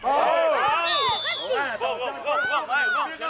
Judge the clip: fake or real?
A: real